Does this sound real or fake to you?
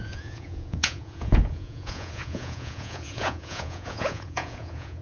fake